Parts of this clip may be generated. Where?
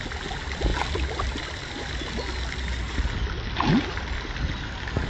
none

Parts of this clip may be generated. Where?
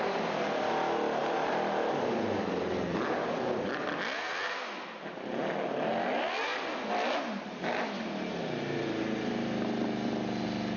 none